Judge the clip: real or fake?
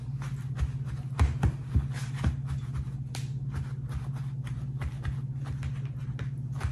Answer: real